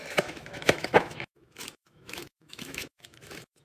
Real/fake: fake